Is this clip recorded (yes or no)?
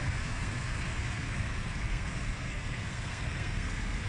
no